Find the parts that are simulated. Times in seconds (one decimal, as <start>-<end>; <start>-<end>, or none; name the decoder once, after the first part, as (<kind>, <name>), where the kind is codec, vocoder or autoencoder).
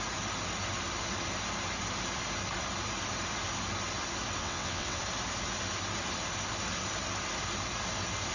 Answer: 4.4-5.0 (vocoder, WaveNeXt)